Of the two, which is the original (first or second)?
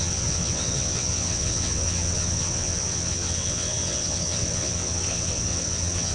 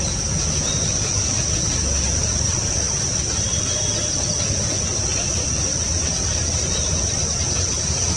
second